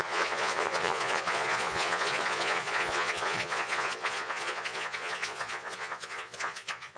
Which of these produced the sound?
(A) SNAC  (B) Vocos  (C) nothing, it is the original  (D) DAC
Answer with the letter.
B